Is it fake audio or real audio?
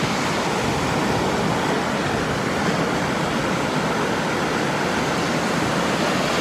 real